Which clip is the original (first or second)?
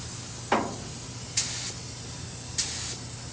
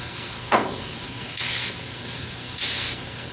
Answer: first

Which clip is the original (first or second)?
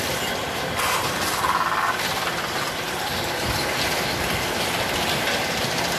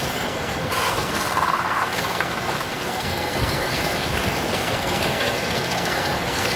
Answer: first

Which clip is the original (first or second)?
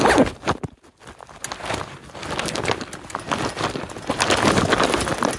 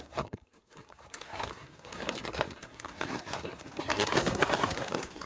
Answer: first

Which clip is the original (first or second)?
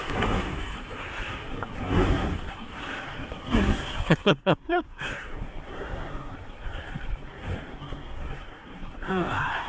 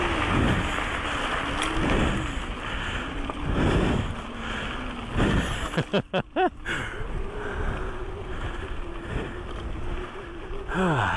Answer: second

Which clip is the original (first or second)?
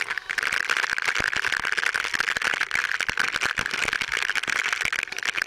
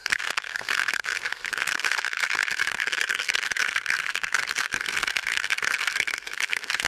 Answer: first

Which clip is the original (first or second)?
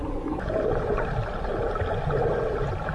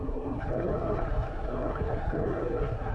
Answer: first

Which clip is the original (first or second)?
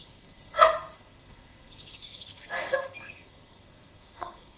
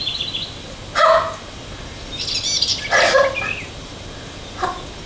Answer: second